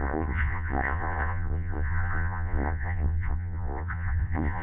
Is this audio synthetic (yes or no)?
yes